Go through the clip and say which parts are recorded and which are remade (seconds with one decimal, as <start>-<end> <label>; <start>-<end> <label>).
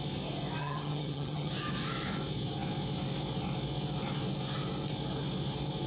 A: 0.0-0.6 recorded; 0.6-1.5 remade; 1.5-5.9 recorded